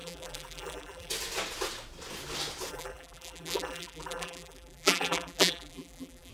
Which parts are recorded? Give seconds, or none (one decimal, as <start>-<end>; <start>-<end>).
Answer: 1.1-2.7